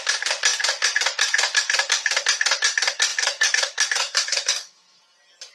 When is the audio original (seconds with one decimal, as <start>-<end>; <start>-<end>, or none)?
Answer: 0.0-3.1; 5.0-5.5